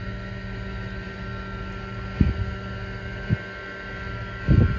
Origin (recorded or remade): recorded